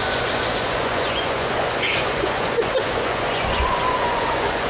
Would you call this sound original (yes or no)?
no